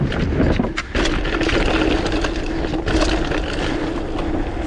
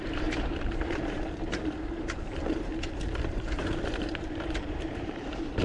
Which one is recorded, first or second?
first